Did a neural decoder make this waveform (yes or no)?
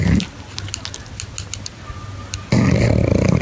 no